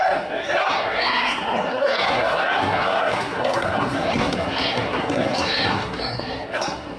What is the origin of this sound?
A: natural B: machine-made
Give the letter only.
B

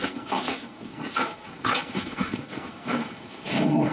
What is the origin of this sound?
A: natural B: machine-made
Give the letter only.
B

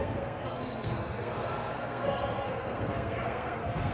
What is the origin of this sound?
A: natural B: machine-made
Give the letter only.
B